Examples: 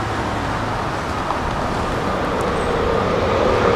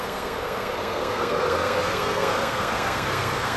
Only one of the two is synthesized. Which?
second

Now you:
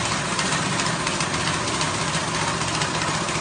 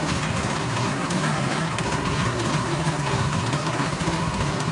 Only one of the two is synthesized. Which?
second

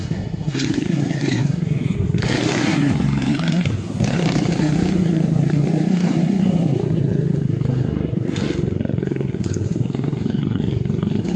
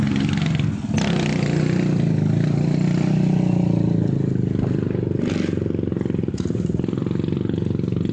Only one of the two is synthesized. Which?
first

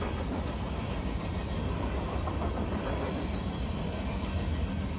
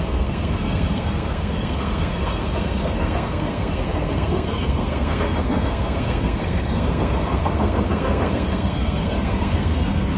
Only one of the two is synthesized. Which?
second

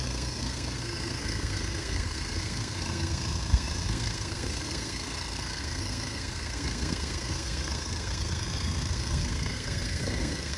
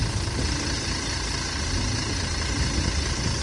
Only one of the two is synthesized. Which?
first